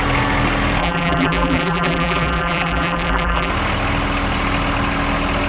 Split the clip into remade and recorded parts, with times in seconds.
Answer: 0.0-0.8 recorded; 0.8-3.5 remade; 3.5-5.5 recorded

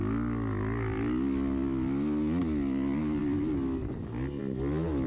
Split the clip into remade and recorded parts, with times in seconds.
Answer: 0.0-5.1 recorded

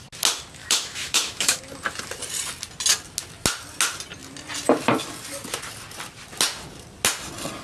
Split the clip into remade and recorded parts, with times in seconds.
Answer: 0.0-0.6 recorded; 0.6-1.6 remade; 1.6-7.6 recorded

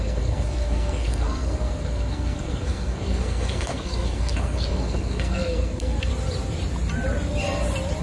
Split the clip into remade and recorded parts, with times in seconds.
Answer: 0.0-6.1 remade; 6.1-8.0 recorded

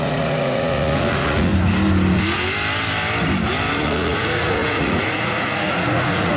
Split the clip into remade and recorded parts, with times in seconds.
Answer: 0.0-1.5 remade; 1.5-3.7 recorded; 3.7-6.4 remade

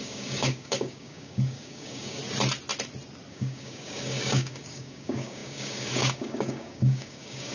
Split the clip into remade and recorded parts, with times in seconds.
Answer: 0.0-2.2 remade; 2.2-3.3 recorded; 3.3-7.5 remade

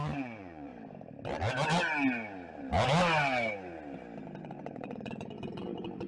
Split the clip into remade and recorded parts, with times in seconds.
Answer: 0.0-0.7 remade; 0.7-4.4 recorded; 4.4-6.1 remade

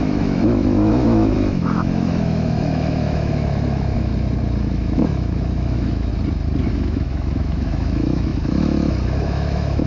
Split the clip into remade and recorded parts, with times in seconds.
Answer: 0.0-4.1 remade; 4.1-4.6 recorded; 4.6-6.1 remade; 6.1-6.7 recorded; 6.7-9.9 remade